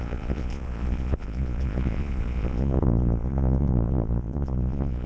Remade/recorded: remade